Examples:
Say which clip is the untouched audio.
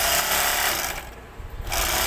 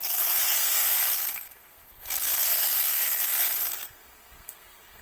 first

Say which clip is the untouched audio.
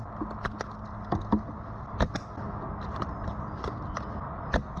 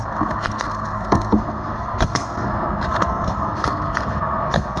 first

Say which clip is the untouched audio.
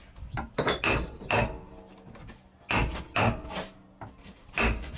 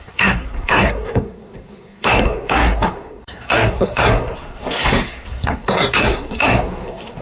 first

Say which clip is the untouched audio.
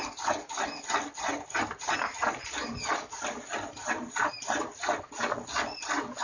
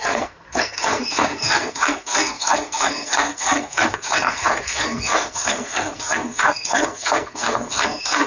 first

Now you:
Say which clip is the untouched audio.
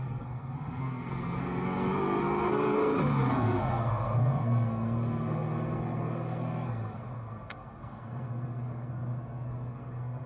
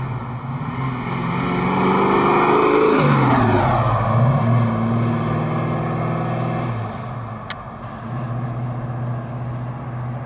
second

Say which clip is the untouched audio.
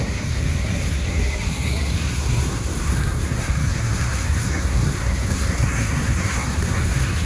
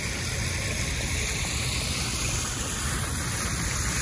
second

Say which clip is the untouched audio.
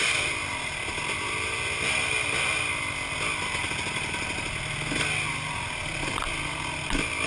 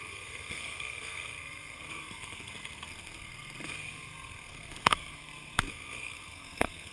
first